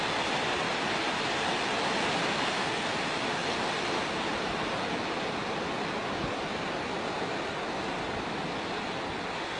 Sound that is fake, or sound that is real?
real